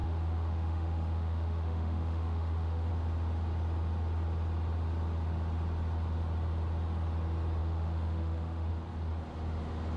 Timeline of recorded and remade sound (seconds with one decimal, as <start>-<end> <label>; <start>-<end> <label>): 0.0-2.9 remade; 2.9-7.6 recorded; 7.6-8.7 remade; 8.7-10.0 recorded